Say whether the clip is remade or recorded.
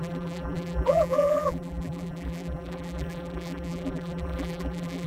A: remade